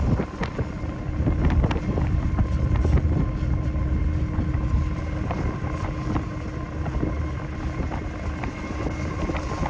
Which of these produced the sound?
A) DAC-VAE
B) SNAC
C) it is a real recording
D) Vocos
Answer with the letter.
C